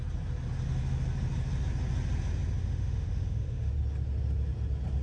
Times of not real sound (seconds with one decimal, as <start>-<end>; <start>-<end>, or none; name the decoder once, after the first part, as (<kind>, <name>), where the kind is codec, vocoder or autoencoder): 2.6-3.7 (autoencoder, DAC-VAE)